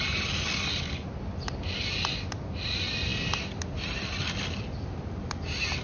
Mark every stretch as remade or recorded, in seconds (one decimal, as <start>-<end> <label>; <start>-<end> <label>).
0.0-5.8 recorded